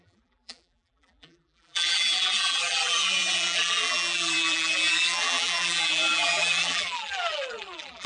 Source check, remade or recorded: remade